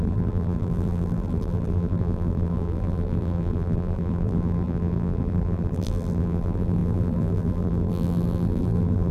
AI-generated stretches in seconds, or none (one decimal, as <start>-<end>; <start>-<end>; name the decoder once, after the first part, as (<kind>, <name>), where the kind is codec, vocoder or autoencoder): 0.0-9.1 (vocoder, BigVGAN v2)